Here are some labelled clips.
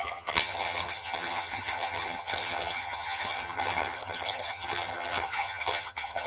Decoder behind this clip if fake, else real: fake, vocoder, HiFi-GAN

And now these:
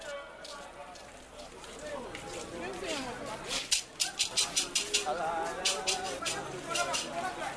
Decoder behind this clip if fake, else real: real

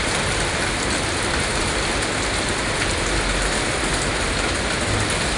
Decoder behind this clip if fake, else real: real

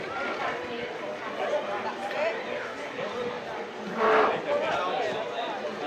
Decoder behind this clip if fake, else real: real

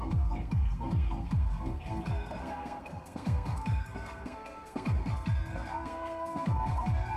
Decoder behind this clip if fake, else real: fake, codec, SNAC